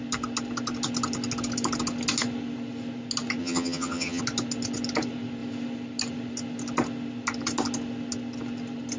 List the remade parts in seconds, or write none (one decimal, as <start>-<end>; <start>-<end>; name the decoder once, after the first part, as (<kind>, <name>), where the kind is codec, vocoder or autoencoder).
3.4-4.2 (vocoder, HiFi-GAN)